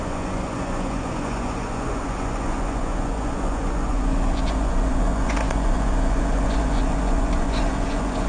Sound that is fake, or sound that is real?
fake